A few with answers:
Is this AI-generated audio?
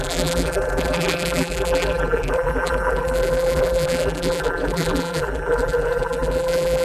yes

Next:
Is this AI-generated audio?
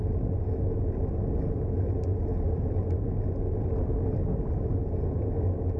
no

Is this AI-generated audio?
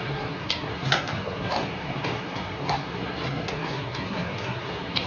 yes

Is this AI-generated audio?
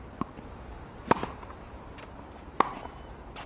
no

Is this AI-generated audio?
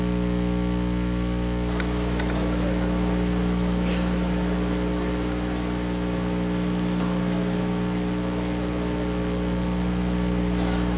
no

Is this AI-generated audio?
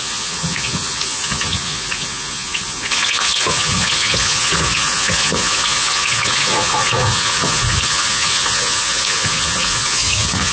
yes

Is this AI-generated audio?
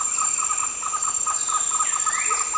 no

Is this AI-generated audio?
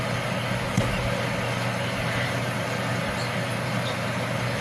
no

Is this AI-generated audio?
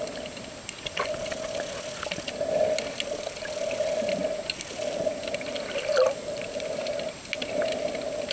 no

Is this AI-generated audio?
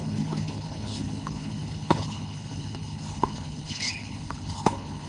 yes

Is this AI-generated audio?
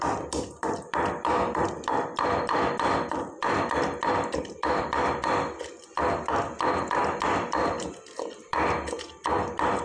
yes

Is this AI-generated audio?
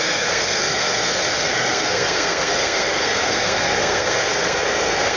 yes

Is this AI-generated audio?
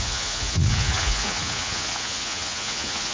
yes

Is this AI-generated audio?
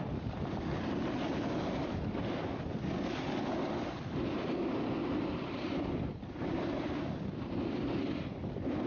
no